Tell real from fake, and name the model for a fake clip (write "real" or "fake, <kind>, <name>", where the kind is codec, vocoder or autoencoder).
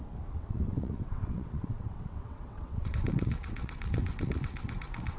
fake, vocoder, WaveNeXt